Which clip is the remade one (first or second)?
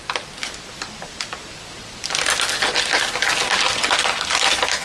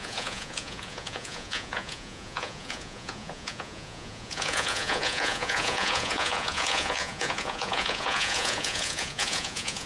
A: second